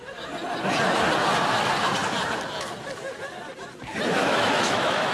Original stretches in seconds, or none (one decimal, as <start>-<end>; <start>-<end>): 0.0-4.2